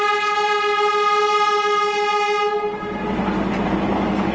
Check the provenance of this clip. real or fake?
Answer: real